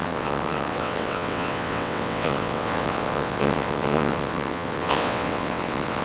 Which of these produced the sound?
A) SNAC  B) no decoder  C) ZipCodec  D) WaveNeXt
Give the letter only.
D